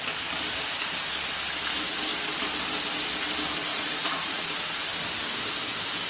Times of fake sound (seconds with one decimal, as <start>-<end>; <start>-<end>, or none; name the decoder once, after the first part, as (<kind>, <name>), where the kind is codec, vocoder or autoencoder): 3.7-4.7 (vocoder, Vocos)